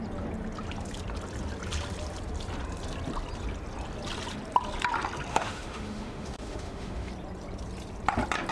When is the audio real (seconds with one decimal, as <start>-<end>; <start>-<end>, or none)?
0.0-5.3; 7.1-8.5